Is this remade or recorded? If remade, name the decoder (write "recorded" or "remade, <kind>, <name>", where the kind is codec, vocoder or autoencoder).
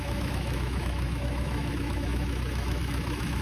remade, autoencoder, DAC-VAE